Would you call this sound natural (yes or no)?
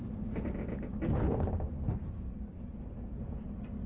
yes